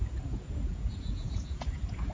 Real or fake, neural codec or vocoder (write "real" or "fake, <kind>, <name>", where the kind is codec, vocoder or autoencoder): fake, vocoder, Vocos